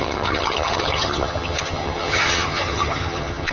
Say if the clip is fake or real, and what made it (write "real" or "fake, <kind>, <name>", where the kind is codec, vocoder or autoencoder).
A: fake, vocoder, HiFi-GAN